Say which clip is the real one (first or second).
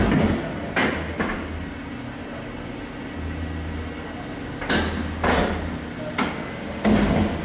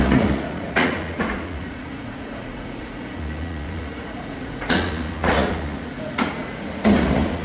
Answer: first